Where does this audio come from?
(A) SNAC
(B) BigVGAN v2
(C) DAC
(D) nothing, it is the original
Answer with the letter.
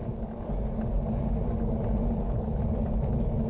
D